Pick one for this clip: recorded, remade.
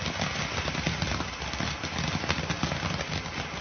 recorded